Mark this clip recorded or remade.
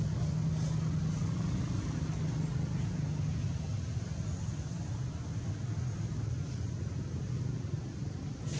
recorded